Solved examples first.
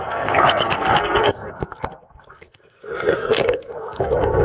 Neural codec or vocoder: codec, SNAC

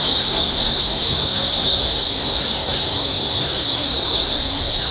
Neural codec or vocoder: codec, SNAC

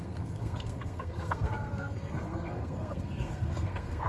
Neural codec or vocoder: codec, SNAC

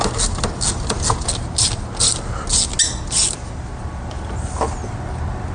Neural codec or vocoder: none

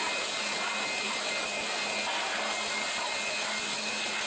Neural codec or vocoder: none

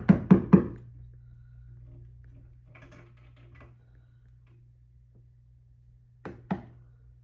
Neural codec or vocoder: none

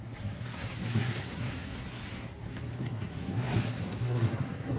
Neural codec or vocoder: codec, SNAC